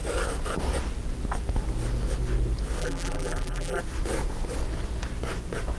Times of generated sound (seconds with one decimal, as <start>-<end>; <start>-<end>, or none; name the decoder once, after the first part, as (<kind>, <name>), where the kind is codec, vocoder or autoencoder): 2.8-3.8 (vocoder, BigVGAN v2)